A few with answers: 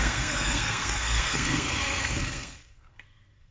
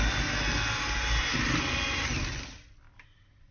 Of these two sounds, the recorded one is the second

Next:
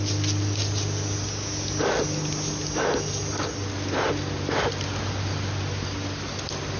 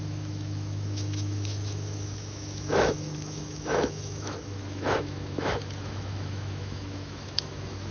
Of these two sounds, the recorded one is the first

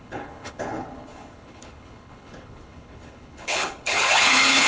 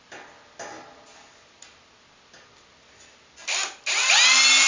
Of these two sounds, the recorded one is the second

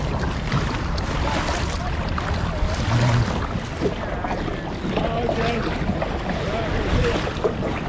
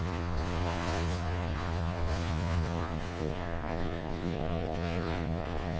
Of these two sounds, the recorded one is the first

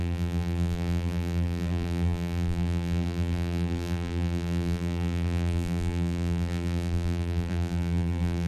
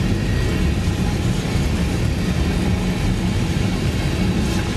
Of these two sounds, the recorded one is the second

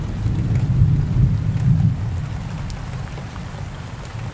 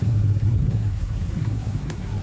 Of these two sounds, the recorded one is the first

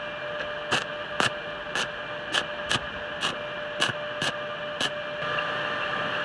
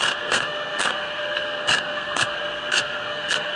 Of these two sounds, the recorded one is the first